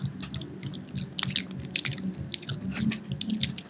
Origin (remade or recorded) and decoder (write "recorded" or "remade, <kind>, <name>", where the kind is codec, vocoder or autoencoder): recorded